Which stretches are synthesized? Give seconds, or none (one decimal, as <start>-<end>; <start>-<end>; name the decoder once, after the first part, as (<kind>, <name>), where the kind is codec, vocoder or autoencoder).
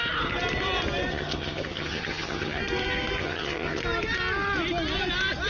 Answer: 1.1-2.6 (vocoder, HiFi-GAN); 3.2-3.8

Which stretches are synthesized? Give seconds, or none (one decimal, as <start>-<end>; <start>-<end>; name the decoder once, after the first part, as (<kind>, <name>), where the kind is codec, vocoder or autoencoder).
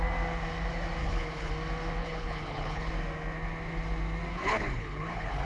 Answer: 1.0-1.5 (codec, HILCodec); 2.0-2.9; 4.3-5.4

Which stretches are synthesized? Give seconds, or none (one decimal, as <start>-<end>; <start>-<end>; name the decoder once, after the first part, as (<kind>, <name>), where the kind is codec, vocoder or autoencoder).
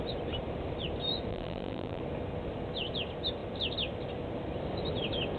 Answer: 1.3-2.0 (vocoder, BigVGAN v2)